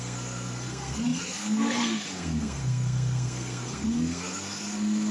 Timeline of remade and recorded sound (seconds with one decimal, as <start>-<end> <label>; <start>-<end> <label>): 0.0-5.1 remade